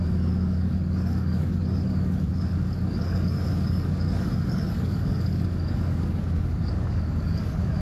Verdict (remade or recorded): remade